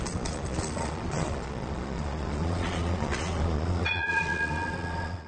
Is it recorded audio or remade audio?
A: remade